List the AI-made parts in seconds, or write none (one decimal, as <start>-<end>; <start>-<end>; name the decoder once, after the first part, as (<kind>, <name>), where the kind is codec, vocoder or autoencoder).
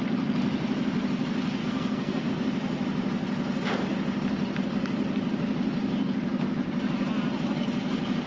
1.6-2.3 (codec, SNAC)